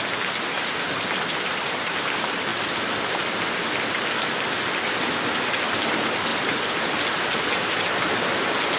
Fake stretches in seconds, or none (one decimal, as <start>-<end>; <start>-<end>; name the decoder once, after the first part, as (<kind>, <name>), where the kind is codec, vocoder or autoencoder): none